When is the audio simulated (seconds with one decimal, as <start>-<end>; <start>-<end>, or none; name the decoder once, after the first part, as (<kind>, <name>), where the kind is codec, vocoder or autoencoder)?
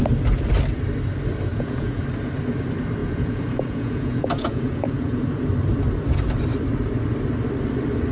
1.5-2.0 (vocoder, Vocos); 3.0-5.5